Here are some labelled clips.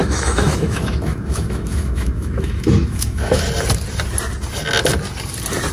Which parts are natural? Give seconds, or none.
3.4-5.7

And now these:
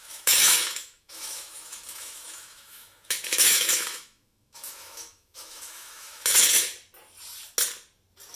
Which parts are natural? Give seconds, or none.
6.7-8.4

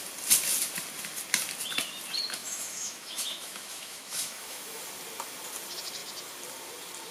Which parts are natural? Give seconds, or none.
0.0-2.4; 4.8-7.1

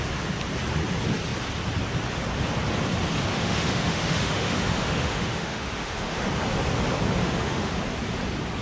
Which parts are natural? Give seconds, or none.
0.0-3.3; 6.2-7.2; 7.8-8.6

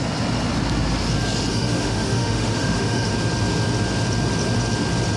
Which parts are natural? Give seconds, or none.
0.0-1.5; 3.1-5.2

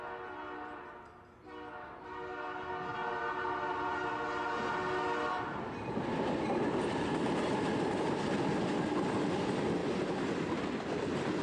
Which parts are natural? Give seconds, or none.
0.0-11.4